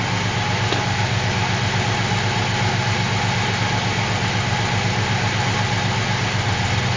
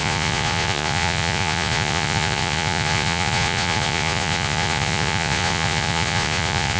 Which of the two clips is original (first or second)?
first